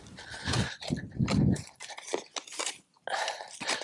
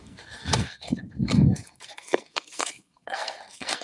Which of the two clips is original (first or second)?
first